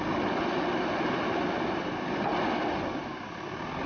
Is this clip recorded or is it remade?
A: recorded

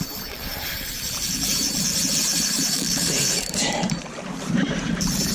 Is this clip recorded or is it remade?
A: remade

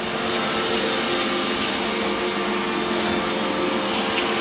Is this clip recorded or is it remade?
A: recorded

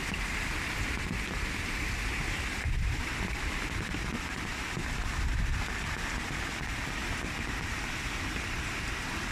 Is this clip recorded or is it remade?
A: recorded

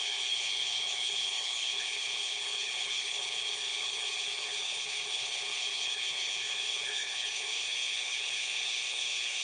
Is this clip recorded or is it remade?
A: remade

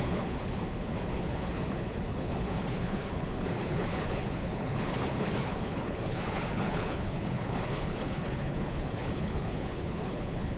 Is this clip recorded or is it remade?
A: remade